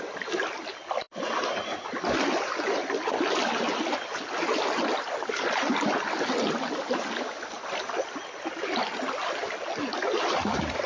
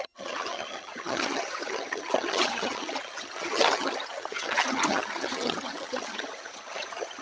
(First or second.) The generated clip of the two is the second